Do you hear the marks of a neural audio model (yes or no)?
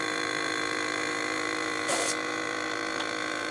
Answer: yes